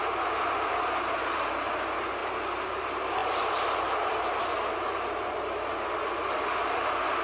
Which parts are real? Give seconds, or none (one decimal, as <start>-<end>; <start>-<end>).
0.0-7.2